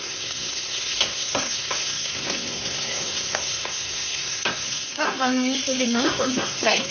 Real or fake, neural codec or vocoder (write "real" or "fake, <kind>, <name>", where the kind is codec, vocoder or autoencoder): fake, codec, SNAC